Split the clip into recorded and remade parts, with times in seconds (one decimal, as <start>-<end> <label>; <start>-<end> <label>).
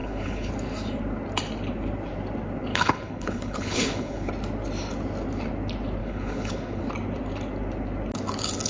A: 0.0-0.5 remade; 0.5-2.7 recorded; 2.7-4.3 remade; 4.3-6.0 recorded; 6.0-6.8 remade; 6.8-8.7 recorded